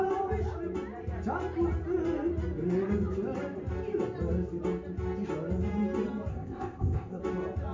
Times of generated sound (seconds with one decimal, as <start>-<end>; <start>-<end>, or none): 6.3-7.2